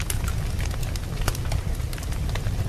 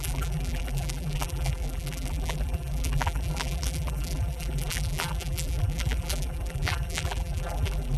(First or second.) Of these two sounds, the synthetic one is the second